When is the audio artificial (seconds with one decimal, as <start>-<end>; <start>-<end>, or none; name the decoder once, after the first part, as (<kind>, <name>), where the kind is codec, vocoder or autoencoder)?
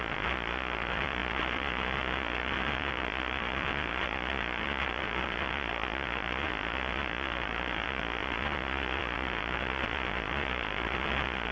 0.0-11.5 (vocoder, Vocos)